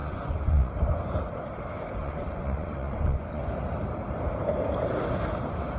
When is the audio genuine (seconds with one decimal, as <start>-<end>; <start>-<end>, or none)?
0.7-2.0; 3.4-5.8